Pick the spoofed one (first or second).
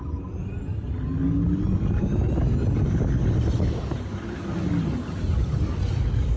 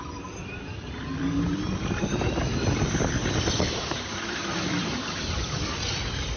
second